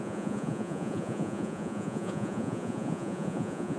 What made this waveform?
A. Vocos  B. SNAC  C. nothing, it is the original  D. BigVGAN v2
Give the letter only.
A